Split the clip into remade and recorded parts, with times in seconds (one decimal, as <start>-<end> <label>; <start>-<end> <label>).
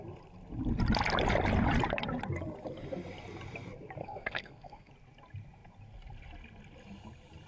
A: 0.0-4.0 recorded; 4.0-4.9 remade; 4.9-7.5 recorded